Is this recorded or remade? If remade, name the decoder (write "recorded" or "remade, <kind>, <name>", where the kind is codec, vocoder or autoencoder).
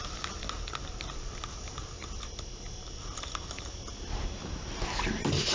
recorded